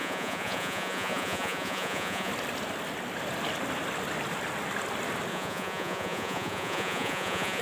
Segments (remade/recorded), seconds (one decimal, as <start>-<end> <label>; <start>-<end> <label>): 0.0-2.3 remade; 2.3-5.3 recorded; 5.3-7.6 remade